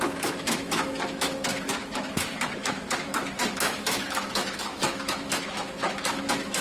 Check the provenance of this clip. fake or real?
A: fake